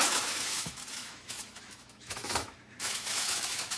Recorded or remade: remade